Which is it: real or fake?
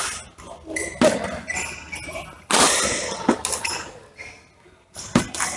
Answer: real